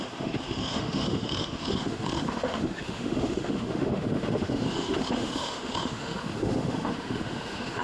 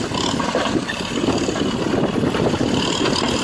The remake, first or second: first